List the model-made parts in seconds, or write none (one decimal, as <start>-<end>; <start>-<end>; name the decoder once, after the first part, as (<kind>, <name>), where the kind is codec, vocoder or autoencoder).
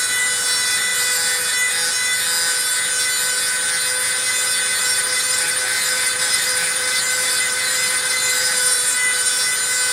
4.8-9.3 (vocoder, BigVGAN v2)